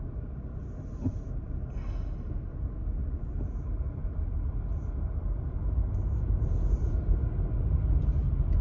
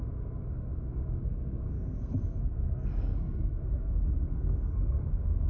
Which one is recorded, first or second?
first